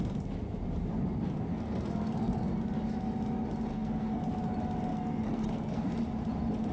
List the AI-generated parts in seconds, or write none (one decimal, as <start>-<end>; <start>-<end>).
1.5-2.6; 3.7-4.2; 4.9-5.9